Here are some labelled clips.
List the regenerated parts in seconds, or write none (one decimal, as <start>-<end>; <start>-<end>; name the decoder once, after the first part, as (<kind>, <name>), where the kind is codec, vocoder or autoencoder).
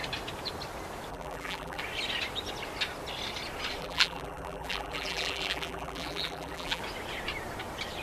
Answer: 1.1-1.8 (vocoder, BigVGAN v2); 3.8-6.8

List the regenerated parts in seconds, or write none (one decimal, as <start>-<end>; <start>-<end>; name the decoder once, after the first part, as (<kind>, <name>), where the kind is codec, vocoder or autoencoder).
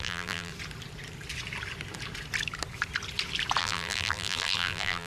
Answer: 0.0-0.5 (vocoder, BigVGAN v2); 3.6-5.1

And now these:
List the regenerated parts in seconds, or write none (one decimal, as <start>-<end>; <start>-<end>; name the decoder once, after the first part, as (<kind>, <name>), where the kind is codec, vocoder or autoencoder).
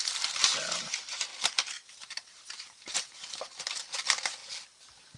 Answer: 0.0-1.3 (vocoder, BigVGAN v2); 1.9-4.4